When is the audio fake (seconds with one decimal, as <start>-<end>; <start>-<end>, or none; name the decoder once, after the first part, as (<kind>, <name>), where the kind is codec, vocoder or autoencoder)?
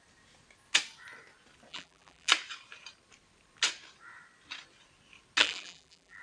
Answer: 1.7-2.3 (vocoder, BigVGAN v2); 5.4-6.2